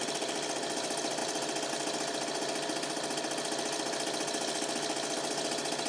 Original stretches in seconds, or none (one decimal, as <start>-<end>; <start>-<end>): 0.0-5.9